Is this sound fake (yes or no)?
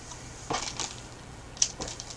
yes